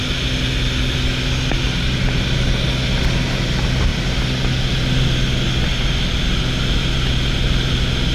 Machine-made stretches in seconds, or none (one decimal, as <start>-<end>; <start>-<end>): none